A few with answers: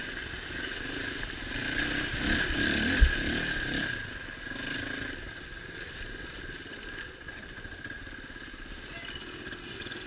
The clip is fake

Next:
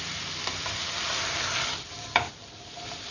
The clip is real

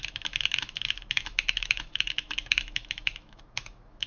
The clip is fake